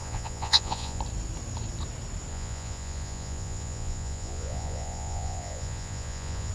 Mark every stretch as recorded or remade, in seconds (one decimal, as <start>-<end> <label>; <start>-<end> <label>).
0.0-1.0 remade; 1.0-2.3 recorded; 2.3-6.5 remade